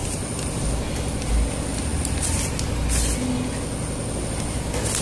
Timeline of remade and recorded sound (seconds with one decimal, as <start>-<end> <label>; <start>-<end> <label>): 0.0-0.6 remade; 0.6-5.0 recorded